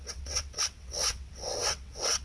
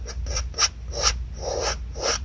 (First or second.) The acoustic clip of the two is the second